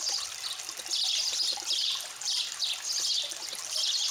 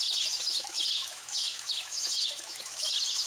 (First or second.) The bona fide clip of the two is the first